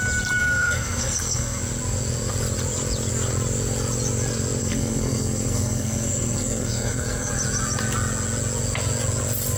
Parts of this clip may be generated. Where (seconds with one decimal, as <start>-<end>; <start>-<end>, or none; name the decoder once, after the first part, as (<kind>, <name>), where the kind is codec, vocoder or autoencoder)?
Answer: 0.4-1.6 (codec, SNAC); 4.6-7.3